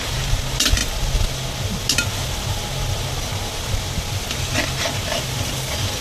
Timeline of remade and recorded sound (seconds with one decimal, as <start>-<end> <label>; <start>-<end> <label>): 0.0-6.0 recorded